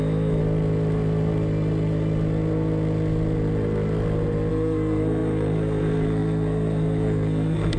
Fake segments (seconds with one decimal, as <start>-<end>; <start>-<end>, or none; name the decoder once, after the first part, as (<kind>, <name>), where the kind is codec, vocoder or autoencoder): 0.0-0.4 (codec, SNAC); 4.5-7.8